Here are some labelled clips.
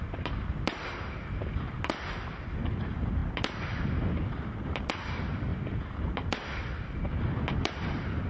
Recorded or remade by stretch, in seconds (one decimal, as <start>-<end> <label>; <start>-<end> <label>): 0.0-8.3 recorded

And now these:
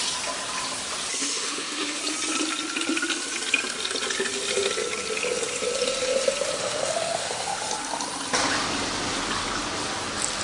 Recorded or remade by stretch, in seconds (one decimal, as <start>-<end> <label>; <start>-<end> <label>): 0.0-1.2 recorded; 1.2-2.0 remade; 2.0-6.6 recorded; 6.6-7.7 remade; 7.7-10.4 recorded

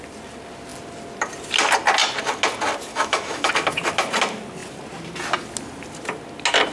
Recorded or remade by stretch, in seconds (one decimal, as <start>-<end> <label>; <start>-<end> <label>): 0.0-2.9 recorded; 2.9-3.5 remade; 3.5-6.7 recorded